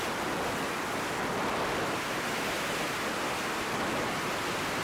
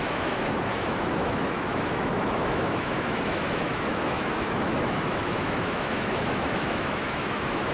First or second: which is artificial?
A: second